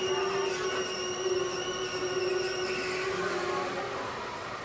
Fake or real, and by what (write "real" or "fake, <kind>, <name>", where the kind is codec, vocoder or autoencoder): real